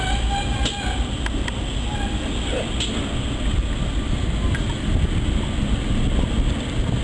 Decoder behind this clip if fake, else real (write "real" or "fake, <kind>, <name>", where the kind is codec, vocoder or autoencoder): real